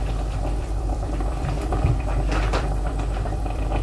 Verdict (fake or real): fake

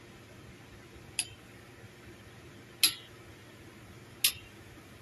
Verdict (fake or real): real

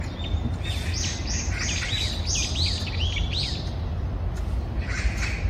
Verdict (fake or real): real